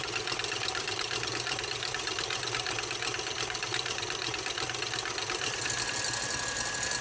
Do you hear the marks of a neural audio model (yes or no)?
no